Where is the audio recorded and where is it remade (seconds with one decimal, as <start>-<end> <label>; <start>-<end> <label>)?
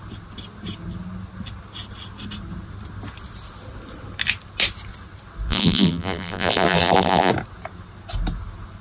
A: 0.0-5.5 recorded; 5.5-7.3 remade; 7.3-8.8 recorded